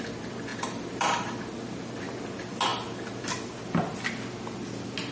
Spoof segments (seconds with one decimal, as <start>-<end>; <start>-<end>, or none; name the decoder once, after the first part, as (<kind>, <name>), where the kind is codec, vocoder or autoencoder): none